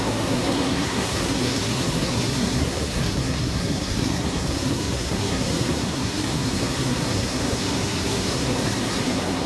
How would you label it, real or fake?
fake